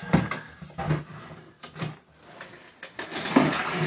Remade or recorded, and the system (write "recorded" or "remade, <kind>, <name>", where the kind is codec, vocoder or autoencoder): recorded